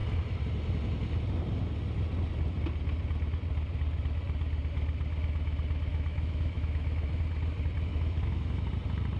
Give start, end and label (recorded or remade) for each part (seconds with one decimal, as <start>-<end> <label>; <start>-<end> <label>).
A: 0.0-5.9 recorded; 5.9-7.1 remade; 7.1-7.9 recorded; 7.9-8.7 remade; 8.7-9.2 recorded